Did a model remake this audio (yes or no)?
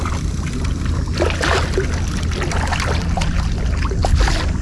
no